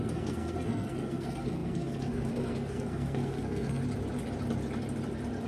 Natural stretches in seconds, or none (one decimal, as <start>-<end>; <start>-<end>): 3.8-5.5